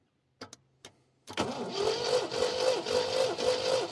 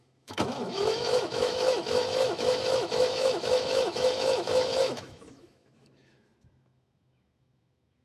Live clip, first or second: first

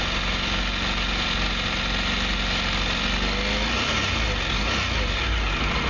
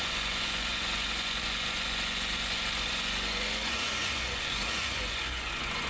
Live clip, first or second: first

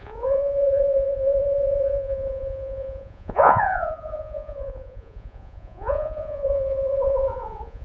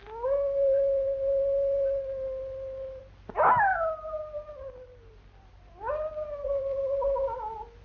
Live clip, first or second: second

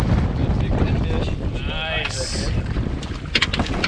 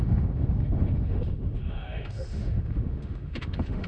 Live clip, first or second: first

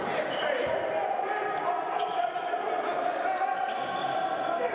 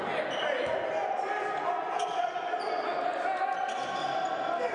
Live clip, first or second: second